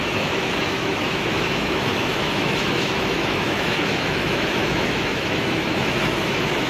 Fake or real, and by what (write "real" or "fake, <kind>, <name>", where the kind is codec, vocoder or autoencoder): fake, autoencoder, DAC-VAE